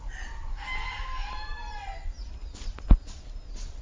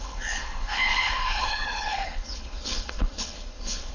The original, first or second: first